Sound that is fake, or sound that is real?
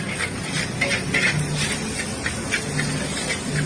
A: real